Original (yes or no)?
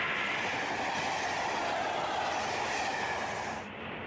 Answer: yes